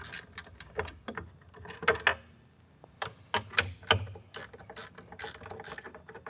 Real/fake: real